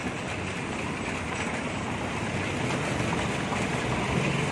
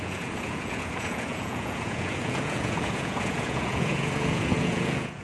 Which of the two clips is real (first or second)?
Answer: first